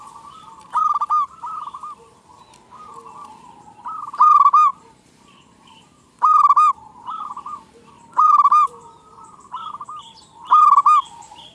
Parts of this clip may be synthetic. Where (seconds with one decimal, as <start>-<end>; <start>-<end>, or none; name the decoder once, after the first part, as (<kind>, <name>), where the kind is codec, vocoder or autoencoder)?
4.7-9.7 (vocoder, BigVGAN v2)